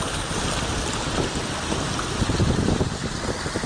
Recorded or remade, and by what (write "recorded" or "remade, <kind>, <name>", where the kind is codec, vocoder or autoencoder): recorded